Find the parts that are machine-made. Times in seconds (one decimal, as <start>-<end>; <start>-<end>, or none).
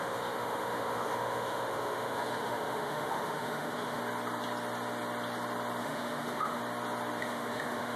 0.0-4.0; 5.8-6.6; 7.2-8.0